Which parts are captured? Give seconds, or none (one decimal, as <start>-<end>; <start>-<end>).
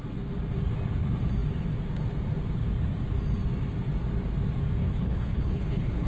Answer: 0.0-4.8